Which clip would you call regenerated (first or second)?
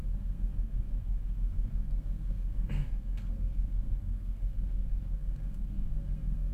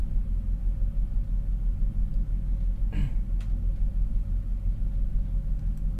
first